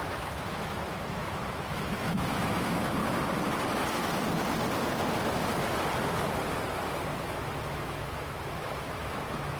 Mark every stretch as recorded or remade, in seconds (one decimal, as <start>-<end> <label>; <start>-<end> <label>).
0.0-3.0 remade; 3.0-7.1 recorded; 7.1-9.6 remade